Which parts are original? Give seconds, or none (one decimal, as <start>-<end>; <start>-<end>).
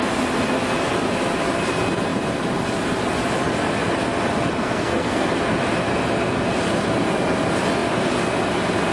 0.0-4.6; 5.3-8.9